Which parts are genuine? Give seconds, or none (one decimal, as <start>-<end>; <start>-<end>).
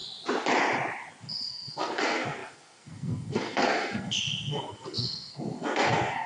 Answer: 0.0-1.2